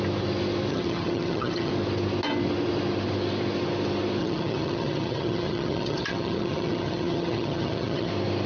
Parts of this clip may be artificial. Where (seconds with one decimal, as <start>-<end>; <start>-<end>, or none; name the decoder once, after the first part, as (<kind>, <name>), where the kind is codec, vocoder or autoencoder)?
0.7-1.7 (vocoder, HiFi-GAN); 4.2-8.1